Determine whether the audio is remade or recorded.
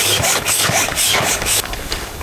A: remade